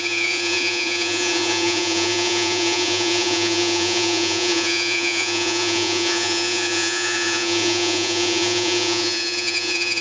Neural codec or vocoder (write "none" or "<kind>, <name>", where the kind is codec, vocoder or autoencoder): vocoder, Vocos